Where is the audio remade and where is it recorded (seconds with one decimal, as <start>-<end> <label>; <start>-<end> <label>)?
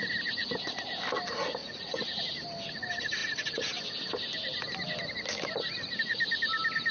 0.0-1.6 recorded; 1.6-2.2 remade; 2.2-6.9 recorded